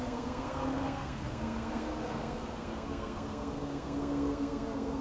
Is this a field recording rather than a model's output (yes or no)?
no